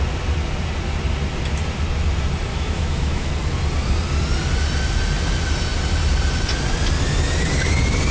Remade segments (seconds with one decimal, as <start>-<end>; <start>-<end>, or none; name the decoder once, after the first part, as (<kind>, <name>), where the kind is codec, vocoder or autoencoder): 2.5-3.3 (autoencoder, DAC-VAE)

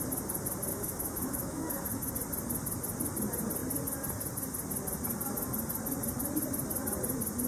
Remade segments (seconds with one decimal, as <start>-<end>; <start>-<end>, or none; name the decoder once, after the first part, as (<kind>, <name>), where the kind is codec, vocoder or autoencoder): 0.7-2.1 (autoencoder, DAC-VAE)

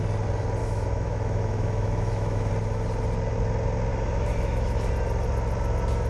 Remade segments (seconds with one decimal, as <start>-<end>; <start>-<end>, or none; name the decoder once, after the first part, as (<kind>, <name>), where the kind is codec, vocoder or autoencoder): 0.6-2.5 (autoencoder, DAC-VAE); 3.9-4.9